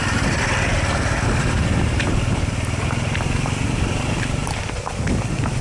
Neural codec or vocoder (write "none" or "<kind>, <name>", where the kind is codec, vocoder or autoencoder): vocoder, BigVGAN v2